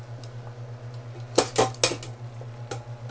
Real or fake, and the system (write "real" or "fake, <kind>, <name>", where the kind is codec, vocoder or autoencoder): real